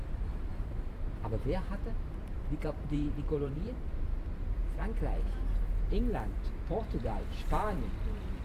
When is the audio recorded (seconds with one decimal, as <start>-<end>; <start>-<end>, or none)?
4.6-6.8